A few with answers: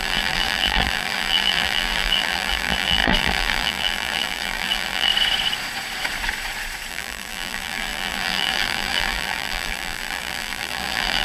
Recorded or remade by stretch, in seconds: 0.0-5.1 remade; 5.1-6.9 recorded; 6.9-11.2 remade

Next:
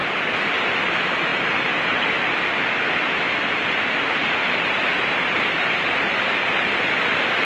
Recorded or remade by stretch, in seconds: 0.0-0.8 remade; 0.8-1.3 recorded; 1.3-2.1 remade; 2.1-4.4 recorded; 4.4-6.1 remade; 6.1-7.4 recorded

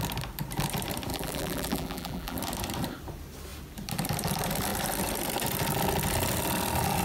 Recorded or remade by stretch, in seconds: 0.0-1.1 recorded; 1.1-2.4 remade; 2.4-7.0 recorded

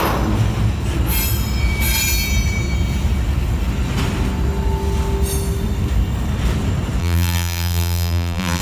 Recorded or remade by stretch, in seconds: 0.0-7.0 recorded; 7.0-8.6 remade

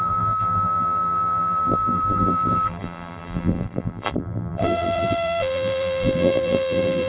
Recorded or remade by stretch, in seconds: 0.0-7.1 remade

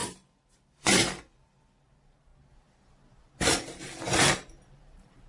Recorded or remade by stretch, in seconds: 0.0-2.3 remade; 2.3-4.8 recorded; 4.8-5.3 remade

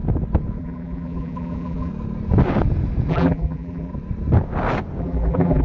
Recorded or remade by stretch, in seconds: 0.0-0.6 recorded; 0.6-1.9 remade; 1.9-3.1 recorded; 3.1-3.9 remade; 3.9-5.0 recorded; 5.0-5.6 remade